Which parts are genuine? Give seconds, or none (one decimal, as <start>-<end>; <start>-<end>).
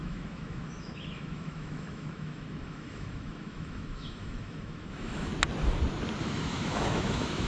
5.3-6.2